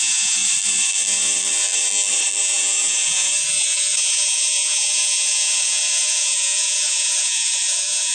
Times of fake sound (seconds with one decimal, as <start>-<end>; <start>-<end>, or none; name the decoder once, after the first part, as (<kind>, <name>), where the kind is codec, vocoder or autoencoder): 0.0-0.4 (vocoder, Vocos); 2.4-8.1